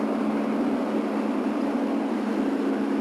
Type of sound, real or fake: real